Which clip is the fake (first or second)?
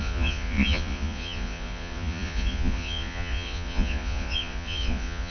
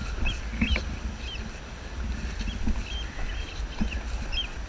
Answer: first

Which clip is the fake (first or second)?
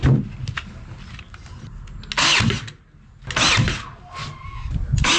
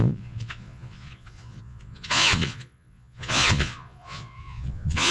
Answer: second